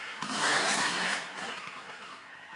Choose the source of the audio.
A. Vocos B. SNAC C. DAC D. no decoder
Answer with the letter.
B